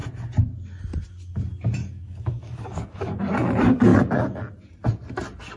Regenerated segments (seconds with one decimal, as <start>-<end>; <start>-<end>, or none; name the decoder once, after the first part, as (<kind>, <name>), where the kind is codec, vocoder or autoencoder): 1.8-3.2 (codec, DAC)